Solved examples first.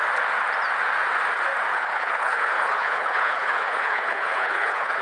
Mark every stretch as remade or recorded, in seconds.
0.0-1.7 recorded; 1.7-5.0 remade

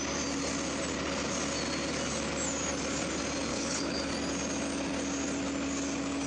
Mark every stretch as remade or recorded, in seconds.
0.0-3.5 recorded; 3.5-4.1 remade; 4.1-6.3 recorded

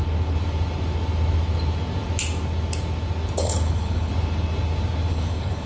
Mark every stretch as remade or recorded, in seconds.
0.0-3.4 recorded; 3.4-4.1 remade; 4.1-5.1 recorded; 5.1-5.7 remade

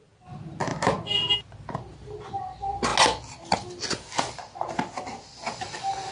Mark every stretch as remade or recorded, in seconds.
0.0-6.1 recorded

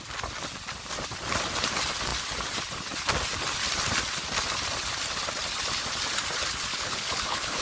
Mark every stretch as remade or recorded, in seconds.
0.0-6.7 recorded; 6.7-7.6 remade

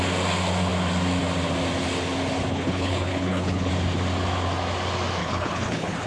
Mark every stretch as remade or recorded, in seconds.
0.0-2.5 recorded; 2.5-3.7 remade; 3.7-5.2 recorded; 5.2-6.1 remade

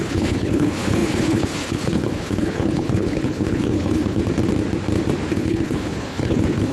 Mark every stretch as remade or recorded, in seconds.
0.0-4.2 remade; 4.2-5.3 recorded; 5.3-6.7 remade